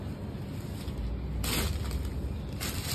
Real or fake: real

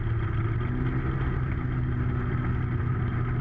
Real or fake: real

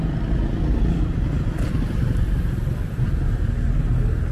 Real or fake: real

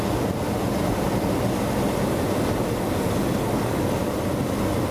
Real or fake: real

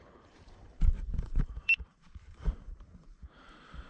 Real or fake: fake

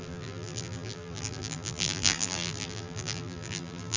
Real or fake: fake